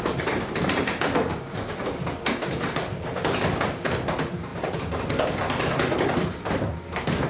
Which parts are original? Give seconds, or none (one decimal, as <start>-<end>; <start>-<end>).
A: 0.0-7.3